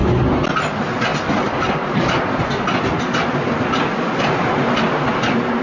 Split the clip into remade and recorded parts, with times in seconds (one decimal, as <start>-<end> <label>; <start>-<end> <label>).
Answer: 0.0-5.6 recorded